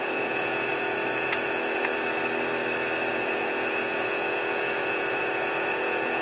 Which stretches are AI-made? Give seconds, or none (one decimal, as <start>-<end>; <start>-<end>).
0.0-1.9; 3.1-6.2